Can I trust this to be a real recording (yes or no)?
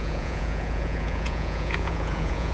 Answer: no